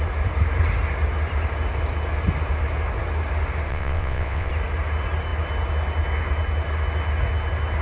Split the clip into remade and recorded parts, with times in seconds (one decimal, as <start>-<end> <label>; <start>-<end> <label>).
0.0-3.7 recorded; 3.7-4.5 remade; 4.5-7.8 recorded